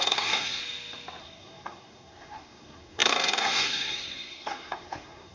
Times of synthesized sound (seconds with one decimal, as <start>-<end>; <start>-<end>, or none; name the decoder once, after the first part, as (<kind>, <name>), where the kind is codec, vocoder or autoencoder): 0.0-0.6 (codec, SNAC); 1.2-5.3